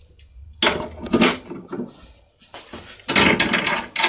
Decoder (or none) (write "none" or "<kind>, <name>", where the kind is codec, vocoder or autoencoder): none